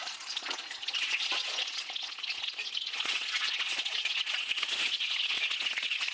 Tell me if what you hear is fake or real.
fake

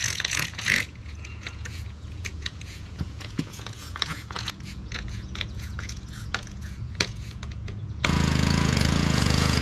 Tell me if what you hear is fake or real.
fake